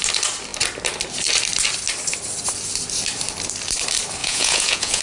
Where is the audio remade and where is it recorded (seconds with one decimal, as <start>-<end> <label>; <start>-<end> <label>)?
0.0-4.2 recorded; 4.2-5.0 remade